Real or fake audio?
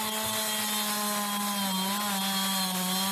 real